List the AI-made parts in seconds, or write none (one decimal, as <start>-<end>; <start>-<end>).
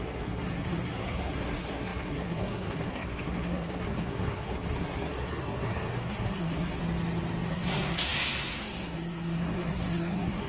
0.0-6.8; 7.5-10.5